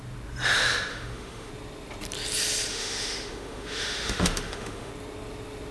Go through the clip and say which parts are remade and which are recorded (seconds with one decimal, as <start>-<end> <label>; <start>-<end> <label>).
0.0-0.9 recorded; 0.9-1.5 remade; 1.5-2.7 recorded; 2.7-4.9 remade; 4.9-5.7 recorded